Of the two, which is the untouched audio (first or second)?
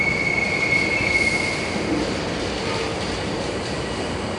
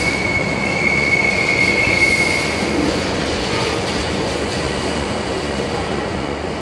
first